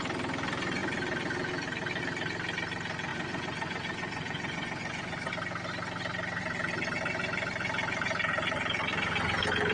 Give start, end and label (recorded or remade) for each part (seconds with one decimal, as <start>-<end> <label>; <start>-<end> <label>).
0.0-3.1 recorded; 3.1-5.3 remade; 5.3-9.7 recorded